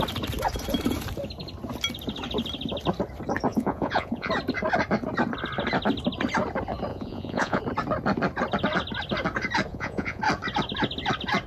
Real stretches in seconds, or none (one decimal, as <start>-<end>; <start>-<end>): 0.0-3.5; 4.3-6.9; 7.6-9.7; 10.2-11.5